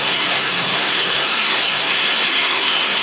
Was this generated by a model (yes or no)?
yes